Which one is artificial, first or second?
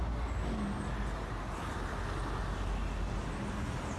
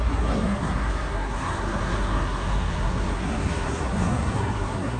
second